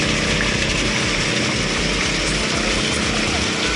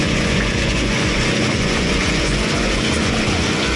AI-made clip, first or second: second